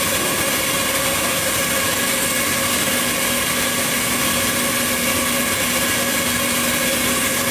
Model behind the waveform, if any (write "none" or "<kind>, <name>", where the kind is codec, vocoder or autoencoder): none